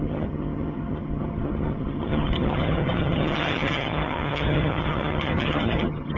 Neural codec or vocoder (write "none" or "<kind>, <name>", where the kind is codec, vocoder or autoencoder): vocoder, HiFi-GAN